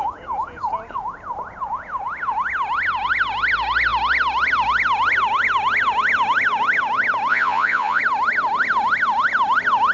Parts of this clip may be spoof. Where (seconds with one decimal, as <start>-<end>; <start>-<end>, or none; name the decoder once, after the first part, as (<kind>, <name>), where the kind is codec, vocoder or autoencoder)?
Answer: 7.3-8.0 (vocoder, Vocos)